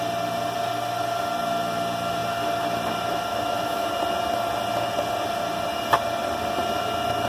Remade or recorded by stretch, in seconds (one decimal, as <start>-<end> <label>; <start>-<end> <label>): 0.0-3.3 recorded; 3.3-3.9 remade; 3.9-7.3 recorded

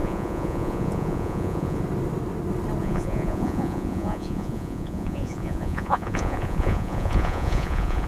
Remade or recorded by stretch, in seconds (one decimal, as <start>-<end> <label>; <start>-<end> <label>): 0.0-1.8 remade; 1.8-2.8 recorded; 2.8-8.1 remade

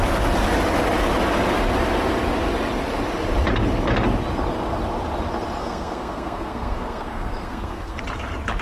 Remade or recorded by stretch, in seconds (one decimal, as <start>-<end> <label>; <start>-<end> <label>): 0.0-5.6 recorded; 5.6-8.0 remade; 8.0-8.6 recorded